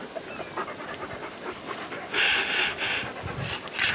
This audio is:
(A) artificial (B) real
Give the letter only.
B